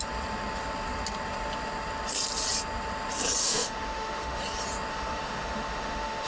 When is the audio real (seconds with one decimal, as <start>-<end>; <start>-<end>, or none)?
0.0-3.4; 4.4-4.9